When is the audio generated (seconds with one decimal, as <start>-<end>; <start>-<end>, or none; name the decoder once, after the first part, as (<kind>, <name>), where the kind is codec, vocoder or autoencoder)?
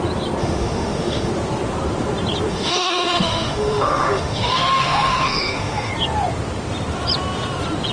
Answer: 0.4-1.3 (autoencoder, DAC-VAE); 2.5-5.9